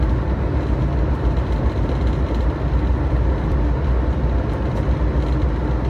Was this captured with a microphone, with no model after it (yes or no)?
yes